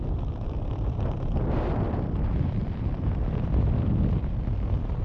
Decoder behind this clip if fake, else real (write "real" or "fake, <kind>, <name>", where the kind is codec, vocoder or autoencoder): fake, vocoder, BigVGAN v2